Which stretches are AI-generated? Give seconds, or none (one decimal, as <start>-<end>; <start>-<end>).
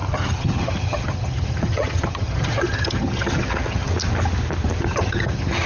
0.0-3.9; 4.8-5.7